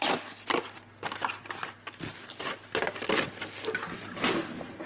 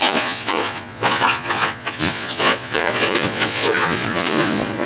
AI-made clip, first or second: second